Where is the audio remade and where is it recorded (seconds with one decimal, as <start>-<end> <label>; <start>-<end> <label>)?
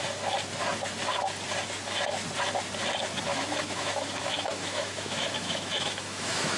0.0-3.3 recorded; 3.3-6.6 remade